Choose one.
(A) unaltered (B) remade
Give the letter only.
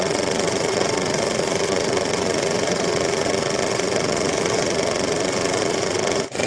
B